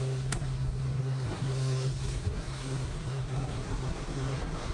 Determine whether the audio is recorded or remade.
remade